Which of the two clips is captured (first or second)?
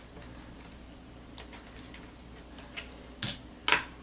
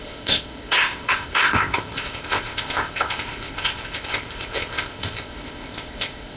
first